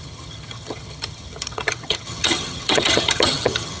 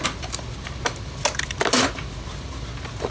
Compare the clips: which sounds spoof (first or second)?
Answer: first